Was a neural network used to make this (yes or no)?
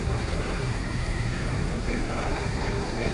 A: yes